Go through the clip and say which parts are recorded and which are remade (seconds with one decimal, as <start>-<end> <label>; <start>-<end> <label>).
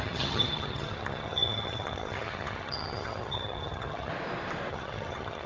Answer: 0.0-4.1 remade; 4.1-4.7 recorded; 4.7-5.5 remade